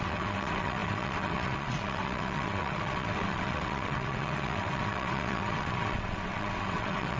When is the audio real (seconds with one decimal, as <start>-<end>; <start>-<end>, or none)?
none